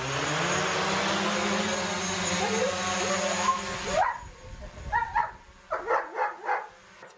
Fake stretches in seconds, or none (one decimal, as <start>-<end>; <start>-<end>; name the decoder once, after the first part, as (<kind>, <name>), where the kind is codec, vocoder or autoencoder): none